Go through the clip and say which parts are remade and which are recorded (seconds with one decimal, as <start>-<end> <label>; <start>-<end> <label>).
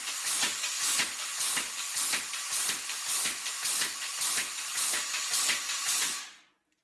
0.0-6.8 recorded